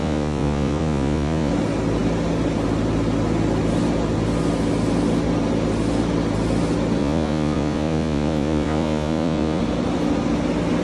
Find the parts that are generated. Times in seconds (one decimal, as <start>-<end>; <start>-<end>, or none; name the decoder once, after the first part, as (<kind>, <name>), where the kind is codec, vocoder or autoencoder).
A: 0.0-1.5 (vocoder, Vocos); 7.0-9.6